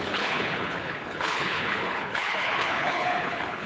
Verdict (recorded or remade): remade